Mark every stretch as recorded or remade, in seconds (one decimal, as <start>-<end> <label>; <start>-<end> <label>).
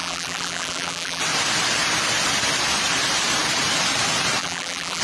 0.0-1.2 remade; 1.2-4.4 recorded; 4.4-5.0 remade